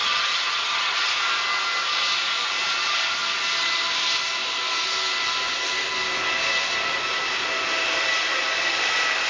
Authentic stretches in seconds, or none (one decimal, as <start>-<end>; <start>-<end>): 1.1-9.3